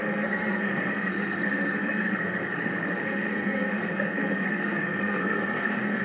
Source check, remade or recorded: remade